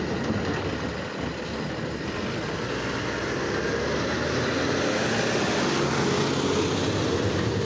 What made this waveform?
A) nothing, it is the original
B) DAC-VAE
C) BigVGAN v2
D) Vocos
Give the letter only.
A